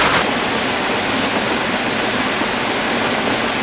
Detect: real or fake real